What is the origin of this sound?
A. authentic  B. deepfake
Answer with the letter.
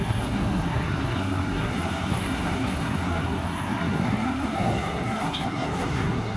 B